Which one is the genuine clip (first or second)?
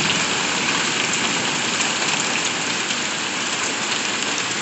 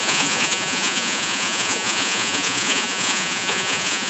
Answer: first